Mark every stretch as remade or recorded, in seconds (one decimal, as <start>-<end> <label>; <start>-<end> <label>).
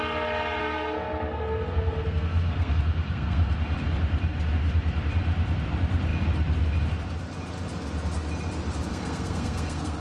0.0-0.6 recorded; 0.6-3.5 remade; 3.5-8.9 recorded; 8.9-10.0 remade